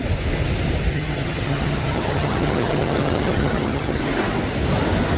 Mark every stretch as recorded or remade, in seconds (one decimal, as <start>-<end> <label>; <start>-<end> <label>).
0.0-0.9 recorded; 0.9-4.0 remade; 4.0-5.2 recorded